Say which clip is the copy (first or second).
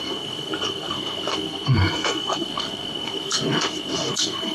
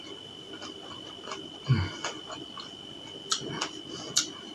first